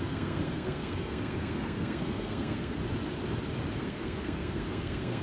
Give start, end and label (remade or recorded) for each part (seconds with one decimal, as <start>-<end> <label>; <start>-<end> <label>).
0.0-2.8 remade; 2.8-3.8 recorded; 3.8-5.2 remade